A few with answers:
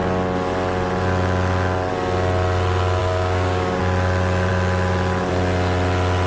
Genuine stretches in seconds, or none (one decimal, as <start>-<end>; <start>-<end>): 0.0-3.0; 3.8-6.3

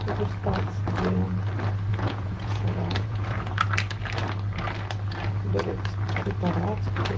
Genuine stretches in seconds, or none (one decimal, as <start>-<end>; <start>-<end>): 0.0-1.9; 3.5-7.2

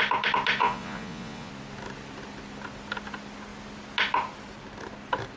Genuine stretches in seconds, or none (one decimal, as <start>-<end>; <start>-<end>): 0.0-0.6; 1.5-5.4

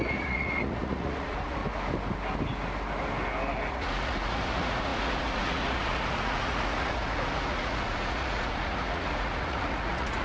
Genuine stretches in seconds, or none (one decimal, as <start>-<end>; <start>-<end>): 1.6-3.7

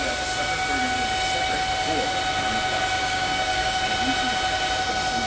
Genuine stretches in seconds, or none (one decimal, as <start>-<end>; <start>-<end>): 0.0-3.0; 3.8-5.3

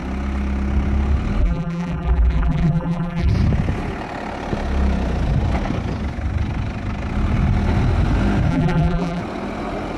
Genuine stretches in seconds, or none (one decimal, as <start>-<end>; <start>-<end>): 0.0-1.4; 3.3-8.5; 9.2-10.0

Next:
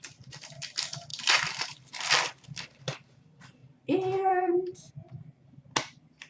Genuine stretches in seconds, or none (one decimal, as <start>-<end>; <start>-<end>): 0.0-1.1; 2.8-3.6; 4.9-6.3